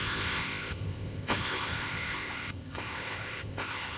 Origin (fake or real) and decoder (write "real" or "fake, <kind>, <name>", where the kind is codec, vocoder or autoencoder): fake, codec, ZipCodec